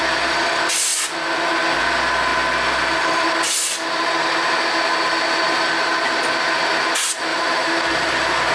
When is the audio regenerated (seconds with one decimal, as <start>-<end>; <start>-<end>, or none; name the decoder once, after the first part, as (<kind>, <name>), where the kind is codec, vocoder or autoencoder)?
7.3-8.5 (vocoder, BigVGAN v2)